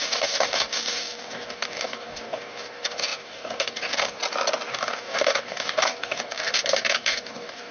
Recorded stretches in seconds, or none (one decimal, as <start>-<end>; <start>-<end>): 4.2-4.7